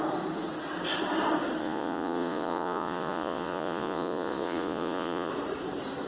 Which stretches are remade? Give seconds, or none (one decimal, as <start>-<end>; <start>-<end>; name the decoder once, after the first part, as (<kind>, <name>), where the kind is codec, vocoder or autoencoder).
1.6-5.3 (vocoder, Vocos)